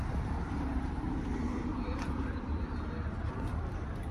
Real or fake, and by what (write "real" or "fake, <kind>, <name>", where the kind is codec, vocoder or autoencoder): fake, vocoder, BigVGAN v2